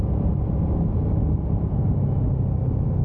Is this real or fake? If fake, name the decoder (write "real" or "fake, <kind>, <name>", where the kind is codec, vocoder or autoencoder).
real